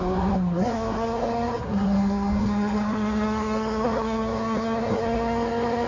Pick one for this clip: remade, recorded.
remade